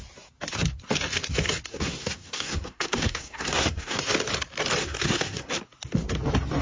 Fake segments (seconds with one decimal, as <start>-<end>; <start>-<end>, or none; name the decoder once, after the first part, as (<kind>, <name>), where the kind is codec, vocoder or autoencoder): 1.7-4.0 (codec, SNAC); 4.8-5.6